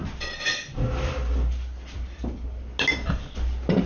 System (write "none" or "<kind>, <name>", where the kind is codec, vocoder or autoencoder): none